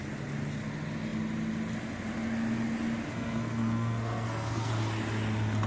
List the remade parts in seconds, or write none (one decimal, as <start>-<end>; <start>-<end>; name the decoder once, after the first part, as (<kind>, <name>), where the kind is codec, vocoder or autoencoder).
3.1-4.7 (codec, SNAC)

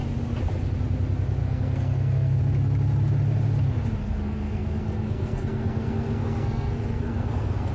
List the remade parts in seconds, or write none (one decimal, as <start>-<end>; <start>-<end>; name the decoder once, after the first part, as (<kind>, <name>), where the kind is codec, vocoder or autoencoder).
1.4-2.4 (codec, SNAC); 4.0-7.7

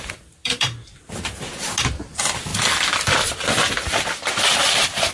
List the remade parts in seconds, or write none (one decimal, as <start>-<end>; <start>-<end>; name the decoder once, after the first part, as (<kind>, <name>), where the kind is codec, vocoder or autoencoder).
0.4-1.2 (vocoder, BigVGAN v2)

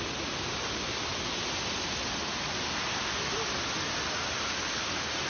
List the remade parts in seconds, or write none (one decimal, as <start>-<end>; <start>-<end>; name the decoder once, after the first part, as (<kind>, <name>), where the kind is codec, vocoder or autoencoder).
none

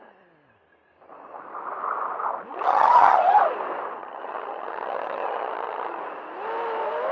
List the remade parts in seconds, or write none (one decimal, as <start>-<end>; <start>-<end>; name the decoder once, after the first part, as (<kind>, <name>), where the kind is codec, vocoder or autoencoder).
2.5-3.2 (vocoder, HiFi-GAN); 4.0-6.0

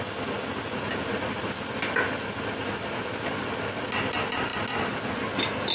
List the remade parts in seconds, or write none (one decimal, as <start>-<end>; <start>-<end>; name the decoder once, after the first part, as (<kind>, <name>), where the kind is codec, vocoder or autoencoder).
none

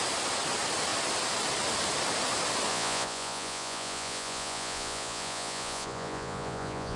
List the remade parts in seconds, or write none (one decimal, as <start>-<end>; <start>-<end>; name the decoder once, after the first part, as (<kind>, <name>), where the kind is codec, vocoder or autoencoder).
2.7-7.0 (vocoder, Vocos)

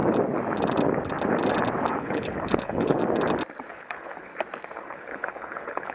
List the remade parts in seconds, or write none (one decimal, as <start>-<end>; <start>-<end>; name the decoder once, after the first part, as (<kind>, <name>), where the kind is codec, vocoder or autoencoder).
1.9-3.0 (codec, HILCodec); 3.7-4.3; 4.8-5.9